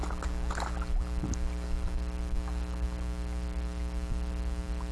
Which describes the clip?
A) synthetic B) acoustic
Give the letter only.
B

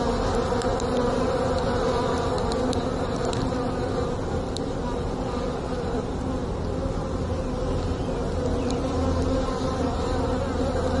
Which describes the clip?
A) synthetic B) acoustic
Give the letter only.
B